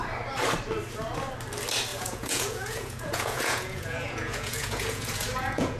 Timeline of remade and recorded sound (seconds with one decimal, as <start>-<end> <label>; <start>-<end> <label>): 0.0-1.9 recorded; 1.9-5.8 remade